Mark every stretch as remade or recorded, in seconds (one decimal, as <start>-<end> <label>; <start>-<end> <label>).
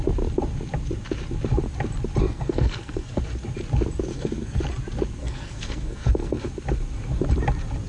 0.0-2.2 recorded; 2.2-3.2 remade; 3.2-4.1 recorded; 4.1-4.6 remade; 4.6-5.2 recorded; 5.2-6.5 remade; 6.5-7.9 recorded